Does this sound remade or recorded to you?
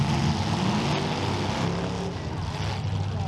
recorded